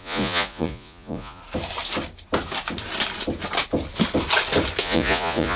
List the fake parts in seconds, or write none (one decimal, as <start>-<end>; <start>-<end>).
0.0-1.4; 4.8-5.6